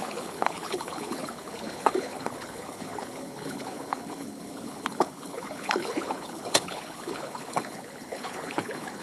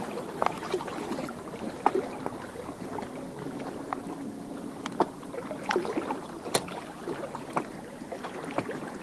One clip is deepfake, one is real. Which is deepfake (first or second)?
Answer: first